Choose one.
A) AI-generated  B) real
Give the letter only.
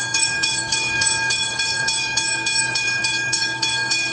A